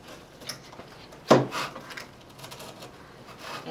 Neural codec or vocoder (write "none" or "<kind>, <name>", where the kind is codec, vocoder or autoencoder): none